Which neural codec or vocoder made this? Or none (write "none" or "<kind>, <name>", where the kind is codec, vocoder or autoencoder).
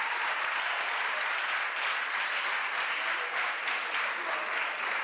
none